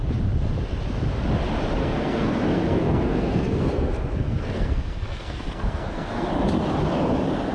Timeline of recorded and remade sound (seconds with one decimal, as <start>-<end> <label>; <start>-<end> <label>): 0.0-1.8 recorded; 1.8-6.3 remade; 6.3-7.5 recorded